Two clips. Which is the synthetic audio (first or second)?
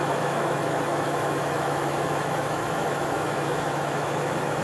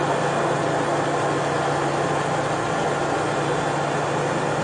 first